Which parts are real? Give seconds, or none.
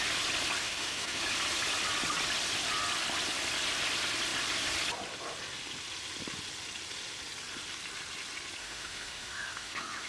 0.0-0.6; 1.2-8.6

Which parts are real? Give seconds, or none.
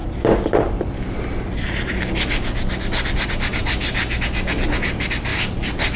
1.9-5.3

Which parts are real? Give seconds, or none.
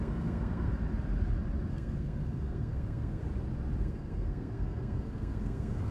0.7-1.7; 3.2-3.8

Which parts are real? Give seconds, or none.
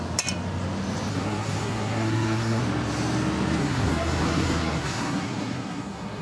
0.0-1.1; 2.6-3.6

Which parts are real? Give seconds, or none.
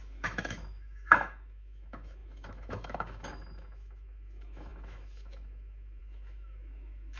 none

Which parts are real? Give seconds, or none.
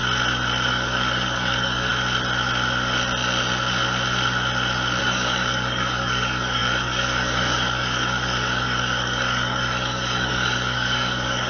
0.0-0.7; 1.9-5.0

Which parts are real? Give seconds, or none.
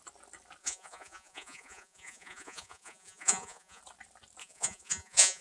0.0-0.6; 3.8-4.4